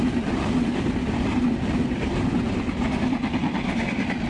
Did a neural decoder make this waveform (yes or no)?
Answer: no